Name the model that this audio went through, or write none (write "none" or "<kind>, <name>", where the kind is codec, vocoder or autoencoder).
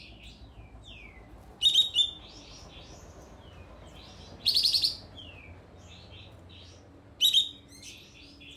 none